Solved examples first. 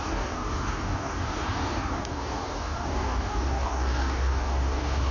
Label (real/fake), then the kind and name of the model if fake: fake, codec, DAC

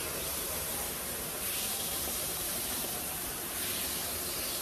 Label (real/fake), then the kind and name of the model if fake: fake, vocoder, BigVGAN v2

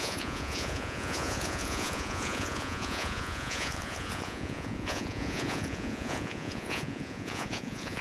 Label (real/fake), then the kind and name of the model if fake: fake, vocoder, Vocos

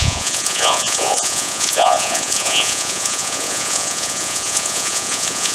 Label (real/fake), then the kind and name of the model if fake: fake, vocoder, Vocos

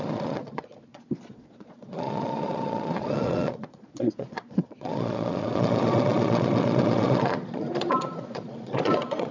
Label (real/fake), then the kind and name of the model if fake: fake, vocoder, Vocos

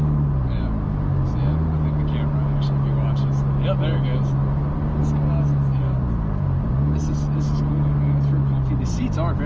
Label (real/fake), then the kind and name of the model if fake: real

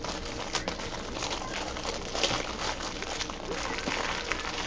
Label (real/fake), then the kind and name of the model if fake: real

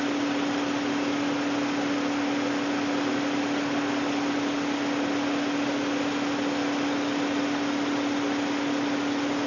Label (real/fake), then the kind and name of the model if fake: real